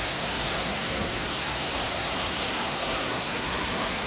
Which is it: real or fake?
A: fake